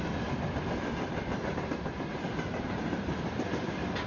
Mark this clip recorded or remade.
recorded